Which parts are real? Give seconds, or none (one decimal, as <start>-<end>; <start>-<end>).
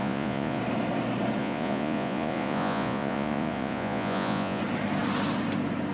0.6-1.4; 4.6-5.9